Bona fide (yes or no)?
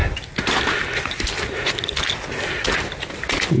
yes